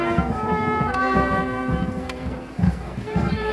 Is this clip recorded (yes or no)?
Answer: no